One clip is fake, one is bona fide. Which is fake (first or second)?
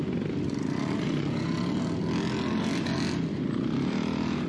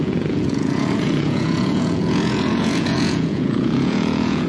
second